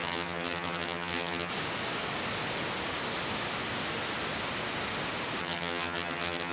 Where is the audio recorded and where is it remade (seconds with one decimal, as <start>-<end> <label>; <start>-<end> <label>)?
0.0-1.5 remade; 1.5-5.4 recorded; 5.4-6.5 remade